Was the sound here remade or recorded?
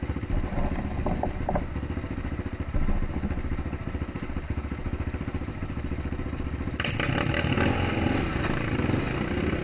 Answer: recorded